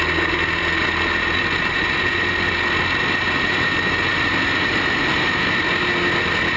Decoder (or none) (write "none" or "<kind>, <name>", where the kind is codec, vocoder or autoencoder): none